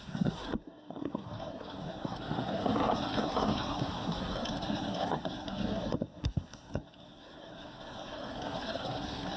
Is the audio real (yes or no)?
no